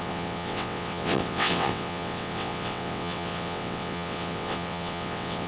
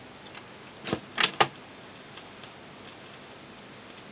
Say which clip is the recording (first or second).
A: second